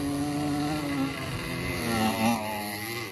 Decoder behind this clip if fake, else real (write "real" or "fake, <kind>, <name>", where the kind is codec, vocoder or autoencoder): real